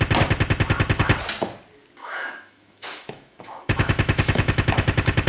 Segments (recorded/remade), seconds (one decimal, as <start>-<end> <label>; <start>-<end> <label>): 0.0-2.0 recorded; 2.0-5.3 remade